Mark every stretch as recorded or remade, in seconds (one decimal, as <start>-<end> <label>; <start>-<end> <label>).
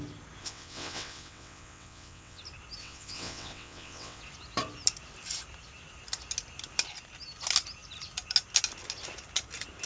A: 0.0-0.4 recorded; 0.4-2.4 remade; 2.4-2.8 recorded; 2.8-4.2 remade; 4.2-9.9 recorded